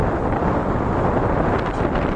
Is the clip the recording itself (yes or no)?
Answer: yes